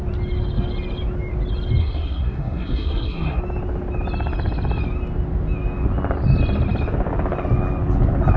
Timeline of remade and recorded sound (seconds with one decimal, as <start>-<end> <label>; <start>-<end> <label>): 0.0-1.8 recorded; 1.8-3.4 remade; 3.4-8.4 recorded